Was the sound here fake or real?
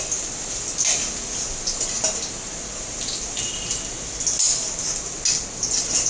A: real